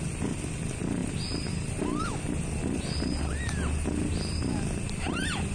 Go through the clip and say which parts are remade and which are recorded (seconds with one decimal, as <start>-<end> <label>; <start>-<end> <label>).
0.0-5.5 recorded